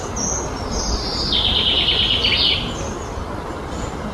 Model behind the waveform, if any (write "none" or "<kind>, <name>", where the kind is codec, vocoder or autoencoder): none